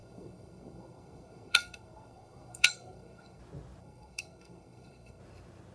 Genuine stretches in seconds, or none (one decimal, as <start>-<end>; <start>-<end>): 3.4-3.8; 5.2-5.7